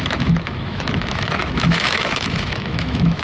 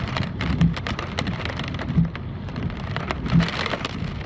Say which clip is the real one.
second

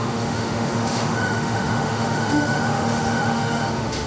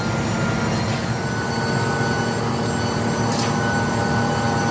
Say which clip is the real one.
second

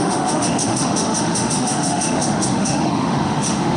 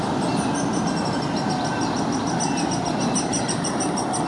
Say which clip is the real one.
second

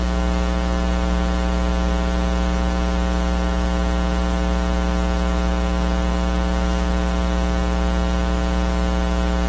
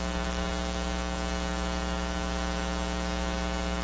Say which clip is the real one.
first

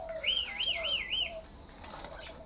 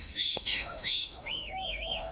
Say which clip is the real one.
first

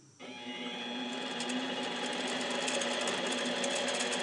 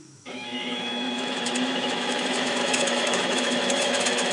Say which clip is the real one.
first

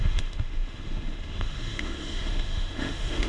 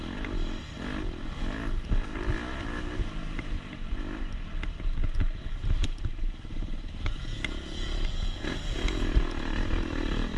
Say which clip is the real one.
second